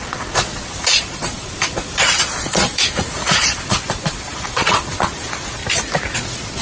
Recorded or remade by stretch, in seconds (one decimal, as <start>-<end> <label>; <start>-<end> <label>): 0.0-5.6 remade; 5.6-6.1 recorded; 6.1-6.6 remade